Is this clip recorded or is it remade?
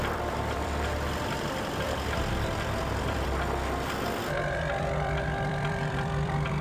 remade